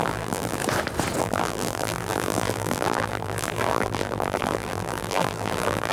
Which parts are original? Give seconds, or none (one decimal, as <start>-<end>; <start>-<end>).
0.6-1.2